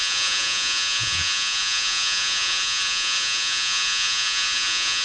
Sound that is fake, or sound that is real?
fake